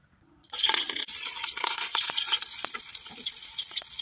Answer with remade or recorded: remade